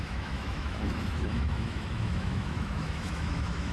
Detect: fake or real fake